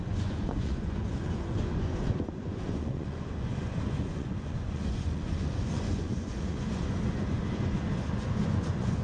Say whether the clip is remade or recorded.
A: remade